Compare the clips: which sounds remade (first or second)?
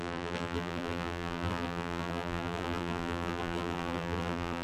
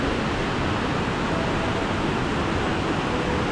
first